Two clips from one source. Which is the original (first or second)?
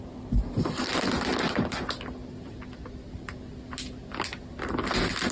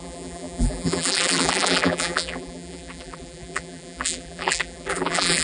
first